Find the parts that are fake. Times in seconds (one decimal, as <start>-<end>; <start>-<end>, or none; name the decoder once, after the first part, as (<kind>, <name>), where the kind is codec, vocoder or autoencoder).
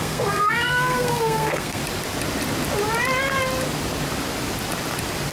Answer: 0.0-1.8 (codec, SNAC)